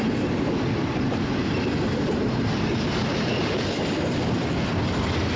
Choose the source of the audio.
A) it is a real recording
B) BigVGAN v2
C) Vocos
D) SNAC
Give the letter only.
A